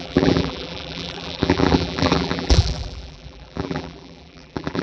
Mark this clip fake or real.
fake